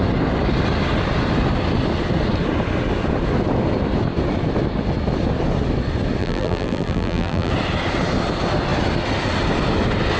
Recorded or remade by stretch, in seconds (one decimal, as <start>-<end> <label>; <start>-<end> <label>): 0.0-6.2 recorded; 6.2-7.5 remade; 7.5-10.2 recorded